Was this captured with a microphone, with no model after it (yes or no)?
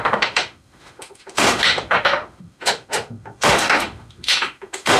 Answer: no